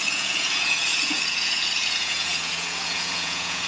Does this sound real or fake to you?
fake